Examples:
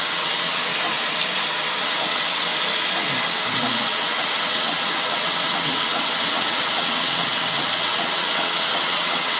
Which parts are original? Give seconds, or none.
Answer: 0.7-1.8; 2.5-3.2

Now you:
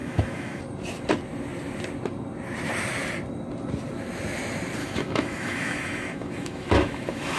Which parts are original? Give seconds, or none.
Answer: 0.6-4.8

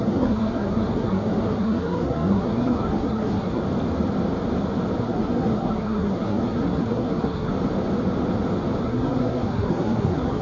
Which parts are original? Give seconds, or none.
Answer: 3.6-5.0; 7.5-8.8

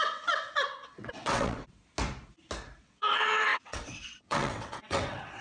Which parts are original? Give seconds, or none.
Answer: 1.6-2.8

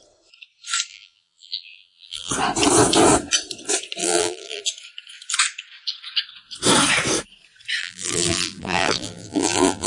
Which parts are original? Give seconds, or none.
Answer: 0.0-0.9; 2.3-4.0; 4.6-7.8

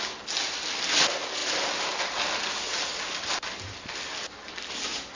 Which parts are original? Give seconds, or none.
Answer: 0.0-5.1

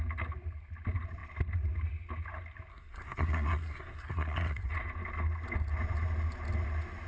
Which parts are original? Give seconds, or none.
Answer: 0.0-2.7; 4.7-7.1